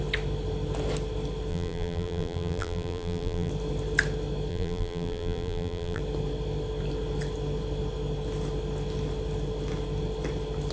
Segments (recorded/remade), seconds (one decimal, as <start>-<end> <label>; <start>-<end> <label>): 0.0-1.5 recorded; 1.5-3.5 remade; 3.5-4.5 recorded; 4.5-6.0 remade; 6.0-10.7 recorded

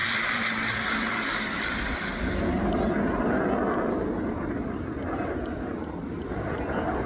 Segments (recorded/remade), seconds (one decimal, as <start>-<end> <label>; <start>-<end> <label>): 0.0-2.4 remade; 2.4-7.1 recorded